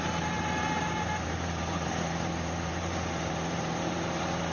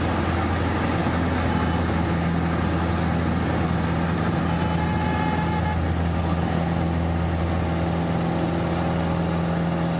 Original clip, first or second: second